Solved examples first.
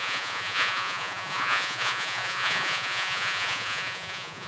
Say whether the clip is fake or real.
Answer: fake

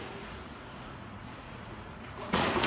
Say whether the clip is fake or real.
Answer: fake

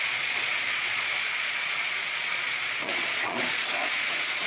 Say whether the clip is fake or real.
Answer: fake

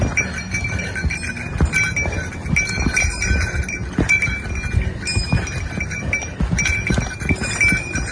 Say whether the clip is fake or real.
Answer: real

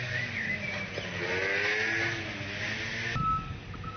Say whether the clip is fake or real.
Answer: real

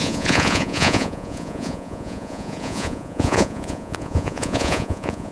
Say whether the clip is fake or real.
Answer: fake